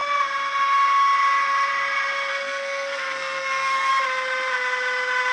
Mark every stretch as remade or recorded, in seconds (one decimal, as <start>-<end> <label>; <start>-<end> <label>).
0.0-2.3 recorded; 2.3-3.9 remade; 3.9-5.3 recorded